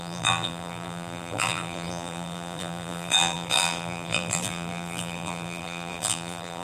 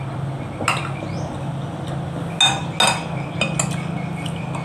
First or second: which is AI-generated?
first